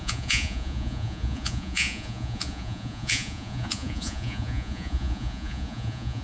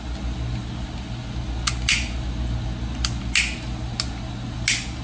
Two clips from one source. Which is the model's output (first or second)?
first